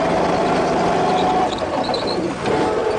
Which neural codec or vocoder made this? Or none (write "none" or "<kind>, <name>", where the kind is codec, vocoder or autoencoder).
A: none